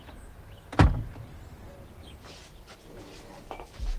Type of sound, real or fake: real